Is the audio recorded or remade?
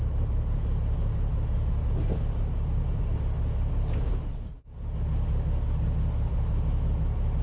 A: recorded